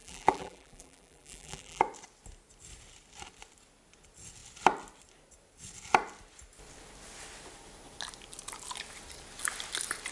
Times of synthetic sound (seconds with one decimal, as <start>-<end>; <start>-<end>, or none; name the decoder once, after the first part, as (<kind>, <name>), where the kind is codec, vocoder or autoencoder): 0.0-1.8 (vocoder, BigVGAN v2)